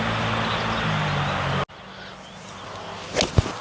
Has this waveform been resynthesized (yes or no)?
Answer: no